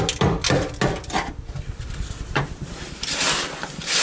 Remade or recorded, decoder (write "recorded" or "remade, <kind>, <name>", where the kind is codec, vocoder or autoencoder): recorded